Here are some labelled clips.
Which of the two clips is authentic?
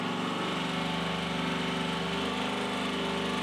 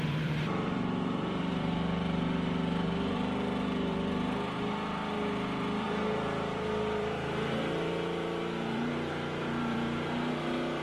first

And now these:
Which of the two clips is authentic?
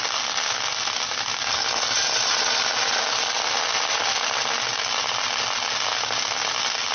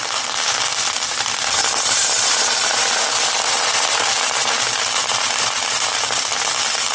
first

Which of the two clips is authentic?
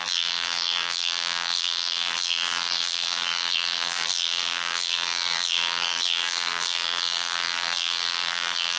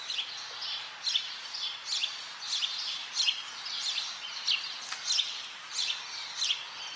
second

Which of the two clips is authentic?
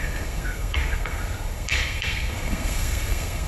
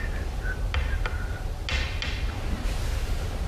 second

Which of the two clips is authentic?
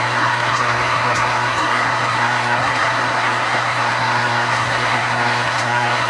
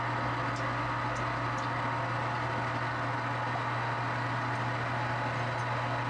second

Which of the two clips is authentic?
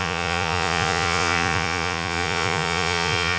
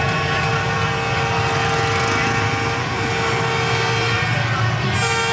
second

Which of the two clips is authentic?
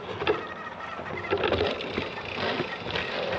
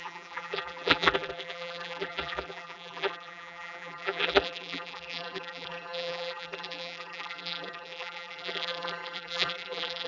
first